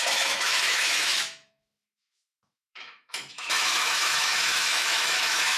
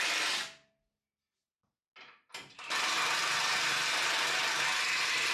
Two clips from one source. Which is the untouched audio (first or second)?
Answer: second